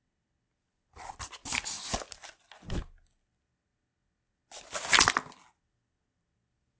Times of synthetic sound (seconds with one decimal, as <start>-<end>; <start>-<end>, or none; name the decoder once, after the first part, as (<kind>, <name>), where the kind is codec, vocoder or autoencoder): none